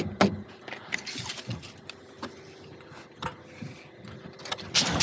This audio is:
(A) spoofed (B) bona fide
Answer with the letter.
B